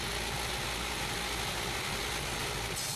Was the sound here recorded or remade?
recorded